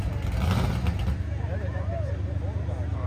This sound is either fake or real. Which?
real